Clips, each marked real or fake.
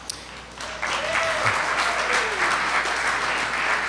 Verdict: real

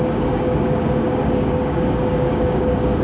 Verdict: fake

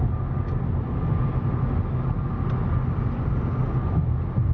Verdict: real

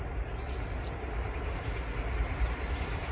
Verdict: real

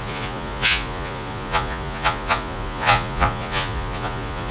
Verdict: fake